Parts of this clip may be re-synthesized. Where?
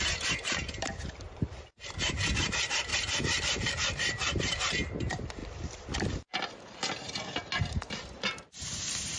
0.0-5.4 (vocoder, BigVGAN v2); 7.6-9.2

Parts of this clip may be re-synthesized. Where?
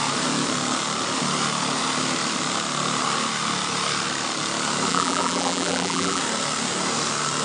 4.9-6.2 (vocoder, BigVGAN v2)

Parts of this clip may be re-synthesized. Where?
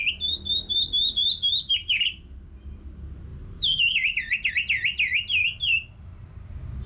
3.3-4.5 (vocoder, BigVGAN v2); 5.8-6.5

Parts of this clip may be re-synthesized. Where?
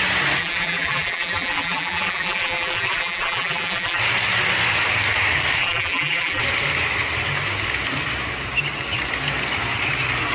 0.4-4.0 (vocoder, BigVGAN v2); 5.6-6.4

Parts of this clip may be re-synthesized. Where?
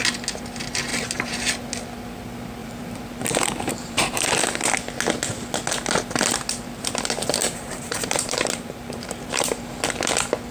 0.9-1.5 (vocoder, BigVGAN v2); 2.6-4.4; 7.4-9.8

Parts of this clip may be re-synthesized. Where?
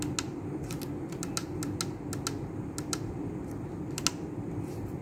none